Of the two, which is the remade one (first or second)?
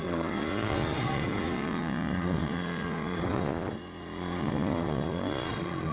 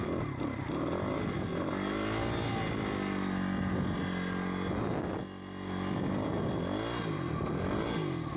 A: first